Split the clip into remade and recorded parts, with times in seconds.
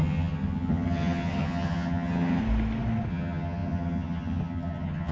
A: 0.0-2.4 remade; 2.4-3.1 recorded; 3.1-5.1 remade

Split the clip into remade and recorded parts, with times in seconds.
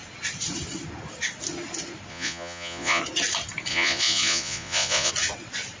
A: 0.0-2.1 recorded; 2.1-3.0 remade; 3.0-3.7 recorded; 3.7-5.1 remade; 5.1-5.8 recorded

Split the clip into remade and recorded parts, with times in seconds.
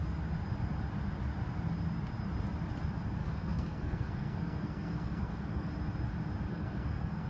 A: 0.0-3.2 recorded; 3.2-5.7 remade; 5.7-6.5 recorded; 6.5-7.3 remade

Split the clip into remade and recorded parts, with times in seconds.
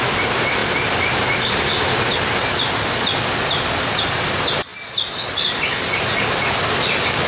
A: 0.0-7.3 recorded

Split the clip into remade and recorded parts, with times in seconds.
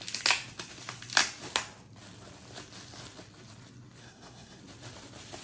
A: 0.0-4.0 recorded; 4.0-4.6 remade; 4.6-5.4 recorded